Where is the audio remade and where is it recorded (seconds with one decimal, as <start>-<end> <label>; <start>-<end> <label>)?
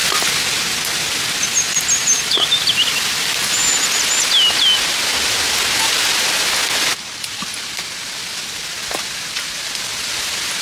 0.0-10.6 recorded